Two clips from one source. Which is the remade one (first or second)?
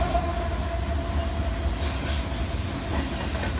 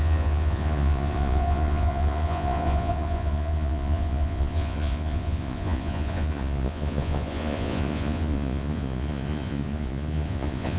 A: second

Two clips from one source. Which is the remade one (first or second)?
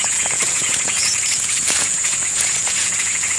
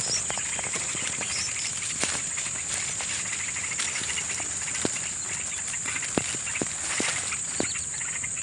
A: first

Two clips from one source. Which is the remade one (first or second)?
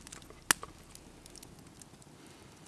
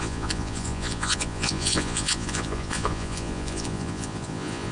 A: second